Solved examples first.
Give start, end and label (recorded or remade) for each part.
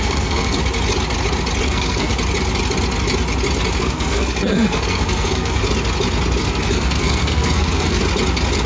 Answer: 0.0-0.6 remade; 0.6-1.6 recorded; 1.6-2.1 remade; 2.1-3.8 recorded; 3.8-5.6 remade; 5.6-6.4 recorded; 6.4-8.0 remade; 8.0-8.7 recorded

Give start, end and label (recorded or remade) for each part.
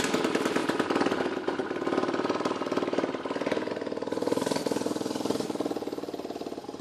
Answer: 0.0-1.6 remade; 1.6-3.7 recorded; 3.7-6.8 remade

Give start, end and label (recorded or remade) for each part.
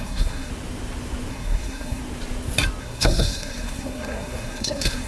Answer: 0.0-0.5 remade; 0.5-1.3 recorded; 1.3-2.0 remade; 2.0-2.8 recorded; 2.8-5.1 remade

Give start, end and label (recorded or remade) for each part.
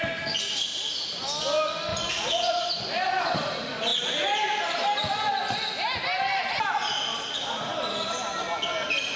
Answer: 0.0-1.9 recorded; 1.9-2.5 remade; 2.5-9.2 recorded